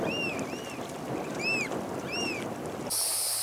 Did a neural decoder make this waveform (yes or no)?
no